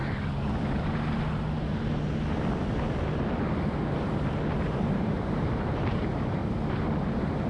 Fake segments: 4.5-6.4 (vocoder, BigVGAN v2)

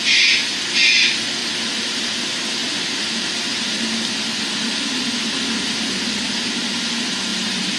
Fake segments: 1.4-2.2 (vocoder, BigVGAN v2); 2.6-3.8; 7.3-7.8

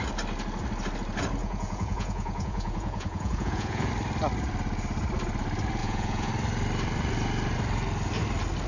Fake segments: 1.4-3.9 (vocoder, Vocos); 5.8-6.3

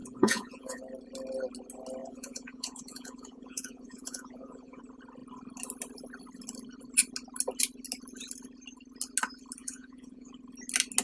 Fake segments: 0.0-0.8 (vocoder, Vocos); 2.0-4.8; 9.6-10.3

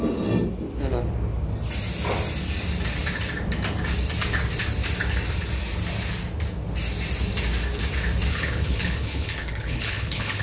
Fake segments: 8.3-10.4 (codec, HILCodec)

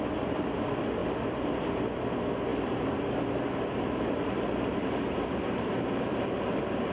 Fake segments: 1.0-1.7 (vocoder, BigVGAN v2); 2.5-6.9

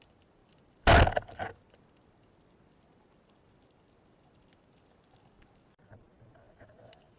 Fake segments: none